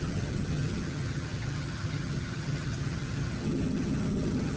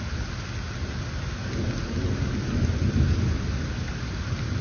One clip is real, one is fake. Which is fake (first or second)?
first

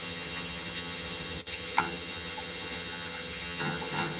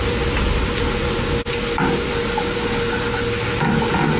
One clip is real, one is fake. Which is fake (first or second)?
first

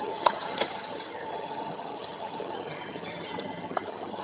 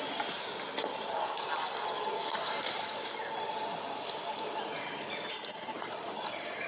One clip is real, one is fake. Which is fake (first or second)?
first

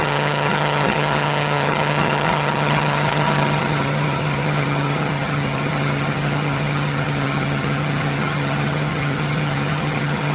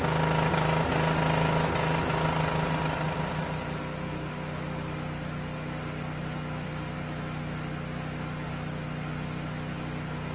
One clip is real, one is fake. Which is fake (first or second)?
first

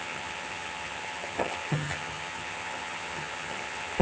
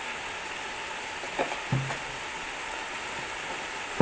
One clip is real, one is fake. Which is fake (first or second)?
first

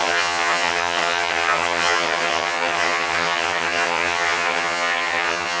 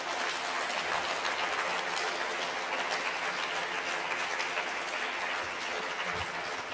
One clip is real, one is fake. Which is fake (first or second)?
first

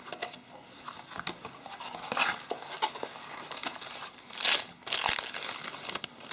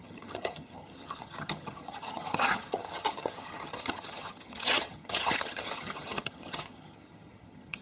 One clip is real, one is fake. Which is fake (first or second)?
second